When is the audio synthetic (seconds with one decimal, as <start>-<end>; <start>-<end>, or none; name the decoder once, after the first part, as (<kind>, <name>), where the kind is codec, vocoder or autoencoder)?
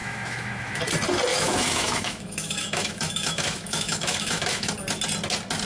0.0-0.8 (autoencoder, DAC-VAE); 1.3-4.7